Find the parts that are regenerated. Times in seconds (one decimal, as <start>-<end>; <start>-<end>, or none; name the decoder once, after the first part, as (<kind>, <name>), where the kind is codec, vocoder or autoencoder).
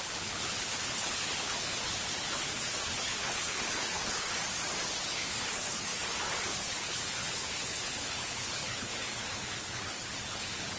0.0-4.4 (codec, HILCodec); 5.0-10.8